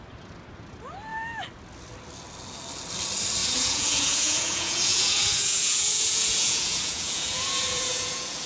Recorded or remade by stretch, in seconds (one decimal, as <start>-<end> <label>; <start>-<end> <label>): 0.0-3.4 recorded; 3.4-8.5 remade